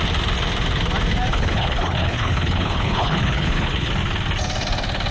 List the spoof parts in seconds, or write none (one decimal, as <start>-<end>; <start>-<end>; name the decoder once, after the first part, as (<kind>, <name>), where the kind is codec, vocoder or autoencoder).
1.3-3.9 (codec, HILCodec)